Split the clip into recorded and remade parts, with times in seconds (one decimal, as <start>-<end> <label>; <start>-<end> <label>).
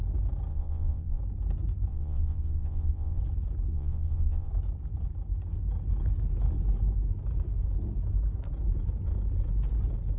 0.0-0.5 recorded; 0.5-1.2 remade; 1.2-1.9 recorded; 1.9-3.2 remade; 3.2-3.7 recorded; 3.7-4.5 remade; 4.5-10.2 recorded